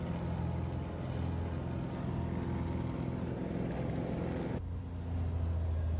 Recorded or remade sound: recorded